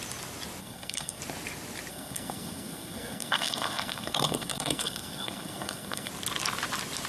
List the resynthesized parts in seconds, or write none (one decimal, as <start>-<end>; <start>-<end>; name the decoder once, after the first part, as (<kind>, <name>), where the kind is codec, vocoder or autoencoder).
0.6-1.2 (codec, SNAC); 1.9-6.1

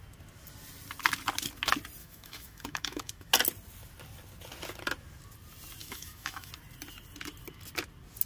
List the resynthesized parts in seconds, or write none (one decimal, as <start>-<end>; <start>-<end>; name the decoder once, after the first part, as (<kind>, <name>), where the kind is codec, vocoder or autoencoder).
2.0-3.3 (autoencoder, DAC-VAE); 5.8-6.5